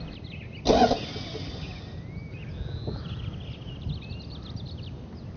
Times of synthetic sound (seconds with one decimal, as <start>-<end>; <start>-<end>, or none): none